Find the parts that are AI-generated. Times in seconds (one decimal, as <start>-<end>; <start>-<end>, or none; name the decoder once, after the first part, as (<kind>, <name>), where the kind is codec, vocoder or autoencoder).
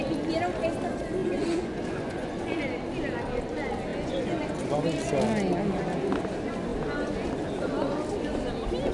1.2-2.6 (vocoder, Vocos); 3.9-4.5